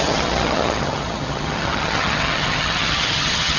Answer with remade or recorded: remade